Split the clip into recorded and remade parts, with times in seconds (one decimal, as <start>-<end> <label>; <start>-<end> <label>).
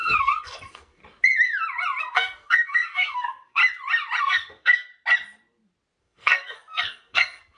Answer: 0.0-1.0 remade; 1.0-2.0 recorded; 2.0-3.6 remade; 3.6-4.2 recorded; 4.2-4.9 remade; 4.9-6.0 recorded; 6.0-7.6 remade